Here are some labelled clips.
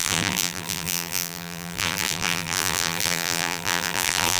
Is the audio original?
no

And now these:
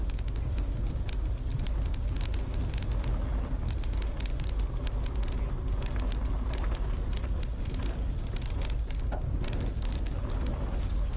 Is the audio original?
yes